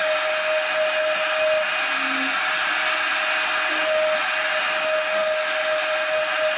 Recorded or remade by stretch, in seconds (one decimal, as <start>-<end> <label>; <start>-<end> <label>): 0.0-6.6 recorded